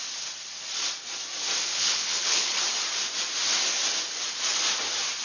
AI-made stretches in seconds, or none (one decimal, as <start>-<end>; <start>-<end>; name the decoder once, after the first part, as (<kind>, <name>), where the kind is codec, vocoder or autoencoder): 1.7-2.6 (codec, HILCodec)